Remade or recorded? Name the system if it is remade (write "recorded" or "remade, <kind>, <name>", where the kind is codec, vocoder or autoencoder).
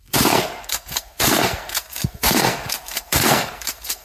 remade, codec, SNAC